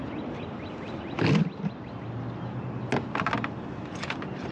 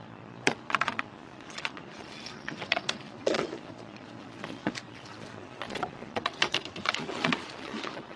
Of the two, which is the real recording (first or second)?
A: first